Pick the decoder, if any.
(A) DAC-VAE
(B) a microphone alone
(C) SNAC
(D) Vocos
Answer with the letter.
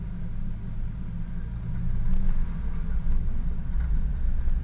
B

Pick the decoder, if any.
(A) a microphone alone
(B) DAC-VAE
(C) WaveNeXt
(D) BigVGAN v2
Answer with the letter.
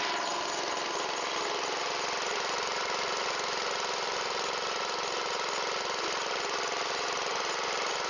A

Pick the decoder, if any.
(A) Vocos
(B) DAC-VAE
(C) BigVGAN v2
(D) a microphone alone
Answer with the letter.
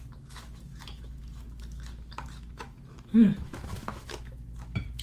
B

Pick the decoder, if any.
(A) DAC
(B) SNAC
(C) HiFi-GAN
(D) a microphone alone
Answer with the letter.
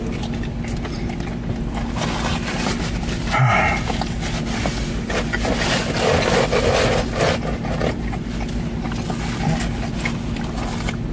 D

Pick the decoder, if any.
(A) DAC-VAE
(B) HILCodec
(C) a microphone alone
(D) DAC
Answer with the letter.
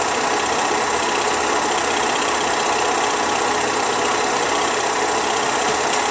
C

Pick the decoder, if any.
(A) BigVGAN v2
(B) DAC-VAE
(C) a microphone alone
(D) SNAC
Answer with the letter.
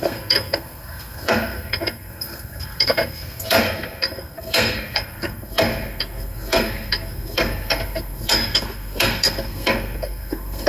D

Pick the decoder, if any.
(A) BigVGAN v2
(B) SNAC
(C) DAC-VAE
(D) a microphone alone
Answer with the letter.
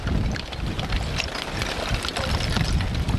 D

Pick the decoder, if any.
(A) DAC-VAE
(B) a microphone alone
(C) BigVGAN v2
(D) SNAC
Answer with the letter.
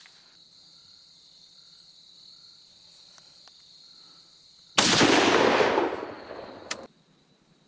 B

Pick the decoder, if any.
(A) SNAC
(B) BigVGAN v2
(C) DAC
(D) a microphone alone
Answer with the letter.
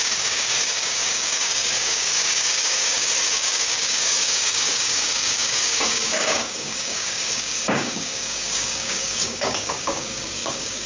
C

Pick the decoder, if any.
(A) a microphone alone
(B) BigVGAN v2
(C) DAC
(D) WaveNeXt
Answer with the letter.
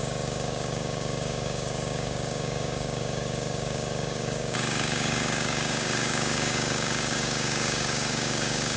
C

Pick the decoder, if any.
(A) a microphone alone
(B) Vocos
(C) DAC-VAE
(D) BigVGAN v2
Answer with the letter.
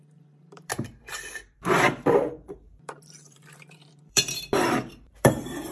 D